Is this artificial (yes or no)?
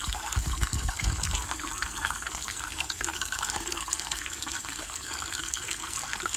yes